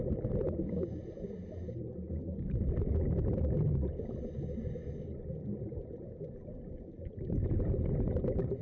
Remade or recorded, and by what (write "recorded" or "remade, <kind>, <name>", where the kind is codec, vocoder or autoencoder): recorded